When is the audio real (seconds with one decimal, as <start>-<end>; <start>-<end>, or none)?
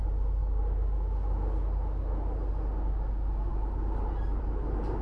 0.0-5.0